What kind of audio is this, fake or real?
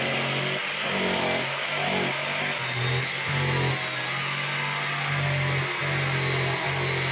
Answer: real